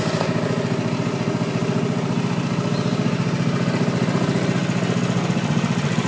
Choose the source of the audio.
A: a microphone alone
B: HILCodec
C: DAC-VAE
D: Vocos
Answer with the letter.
A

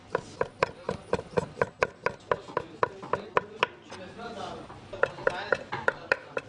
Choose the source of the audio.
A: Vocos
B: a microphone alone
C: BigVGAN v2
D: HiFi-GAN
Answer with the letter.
B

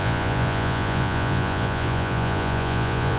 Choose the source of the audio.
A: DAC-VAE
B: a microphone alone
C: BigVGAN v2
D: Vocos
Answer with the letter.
D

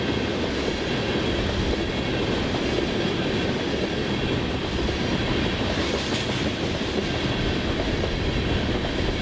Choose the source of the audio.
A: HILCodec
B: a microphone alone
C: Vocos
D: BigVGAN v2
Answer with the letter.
B